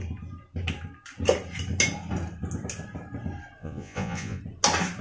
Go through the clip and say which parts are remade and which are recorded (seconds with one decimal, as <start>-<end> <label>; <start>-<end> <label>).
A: 0.0-3.6 recorded; 3.6-4.4 remade; 4.4-5.0 recorded